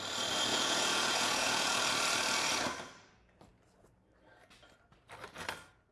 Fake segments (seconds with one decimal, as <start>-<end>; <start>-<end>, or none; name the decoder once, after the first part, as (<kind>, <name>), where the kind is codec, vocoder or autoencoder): 0.5-1.8 (vocoder, Vocos)